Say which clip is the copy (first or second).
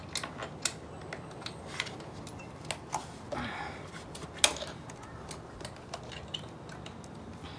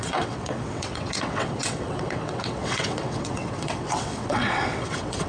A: second